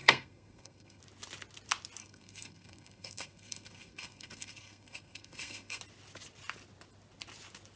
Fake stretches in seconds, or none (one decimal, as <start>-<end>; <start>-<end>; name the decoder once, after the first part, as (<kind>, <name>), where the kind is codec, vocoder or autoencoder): 0.0-1.0 (codec, SNAC); 2.0-5.8